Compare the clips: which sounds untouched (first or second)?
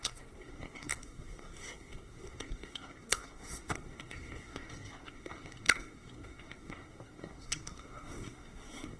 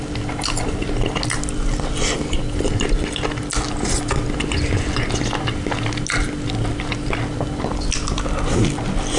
second